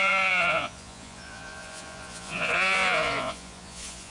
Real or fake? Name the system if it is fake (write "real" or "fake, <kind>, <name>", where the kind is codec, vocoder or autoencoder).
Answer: fake, vocoder, Vocos